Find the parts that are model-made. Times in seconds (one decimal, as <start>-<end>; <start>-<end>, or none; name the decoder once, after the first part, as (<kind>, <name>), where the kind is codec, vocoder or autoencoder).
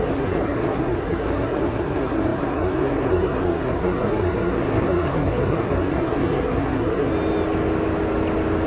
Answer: 0.0-7.1 (codec, SNAC)